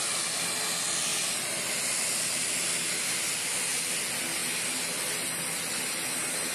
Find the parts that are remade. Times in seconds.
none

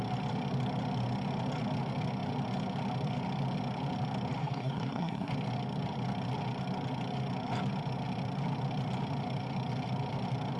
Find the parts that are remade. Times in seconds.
4.4-5.3 (codec, SNAC)

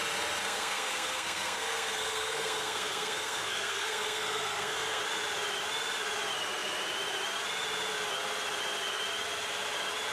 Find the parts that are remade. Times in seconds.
0.4-5.0 (codec, SNAC)

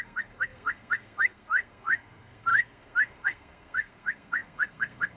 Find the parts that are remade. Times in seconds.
0.0-5.2 (codec, SNAC)

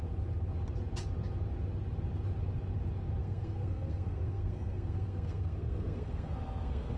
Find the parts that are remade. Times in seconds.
3.2-7.0 (codec, SNAC)

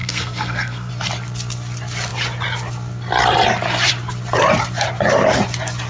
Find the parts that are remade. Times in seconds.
0.0-0.9 (codec, SNAC)